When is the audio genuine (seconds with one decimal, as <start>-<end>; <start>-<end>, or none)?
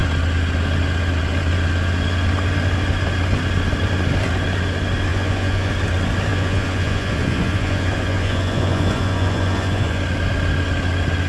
0.0-5.1; 5.7-6.3; 10.0-11.3